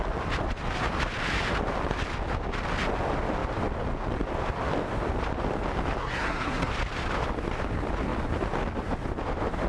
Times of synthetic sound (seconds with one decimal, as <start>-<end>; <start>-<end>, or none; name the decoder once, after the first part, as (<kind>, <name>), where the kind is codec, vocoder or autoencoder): 6.0-6.7 (codec, SNAC)